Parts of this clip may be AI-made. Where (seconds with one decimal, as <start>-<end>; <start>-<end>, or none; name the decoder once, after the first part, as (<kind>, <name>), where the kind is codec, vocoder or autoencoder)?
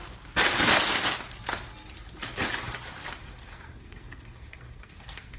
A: 3.2-5.4 (codec, SNAC)